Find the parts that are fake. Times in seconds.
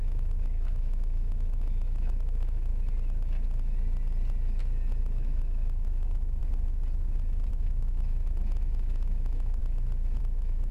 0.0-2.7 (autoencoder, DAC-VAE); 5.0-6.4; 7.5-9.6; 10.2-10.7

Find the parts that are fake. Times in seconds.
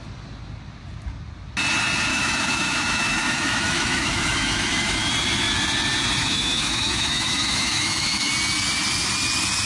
2.1-5.1 (autoencoder, DAC-VAE); 6.2-8.3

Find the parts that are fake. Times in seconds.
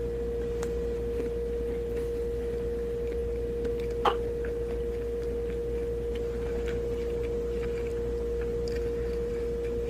none